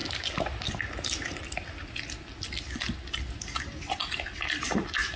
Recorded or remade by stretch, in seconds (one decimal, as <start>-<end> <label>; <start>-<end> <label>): 0.0-5.2 recorded